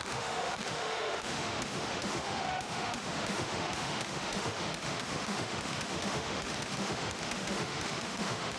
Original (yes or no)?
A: no